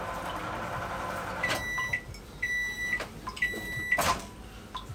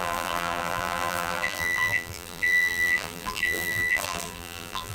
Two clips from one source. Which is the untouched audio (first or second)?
first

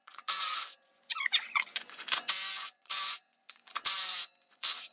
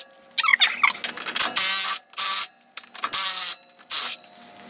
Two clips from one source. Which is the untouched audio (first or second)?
second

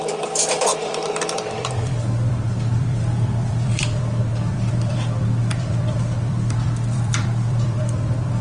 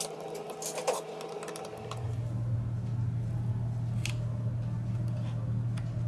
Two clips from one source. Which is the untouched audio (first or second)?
second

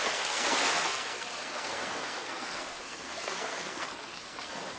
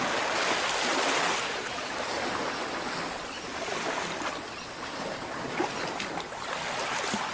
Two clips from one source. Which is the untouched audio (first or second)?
second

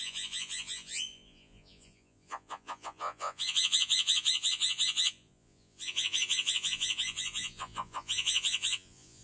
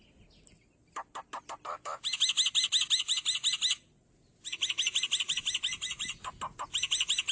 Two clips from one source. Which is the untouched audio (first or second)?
second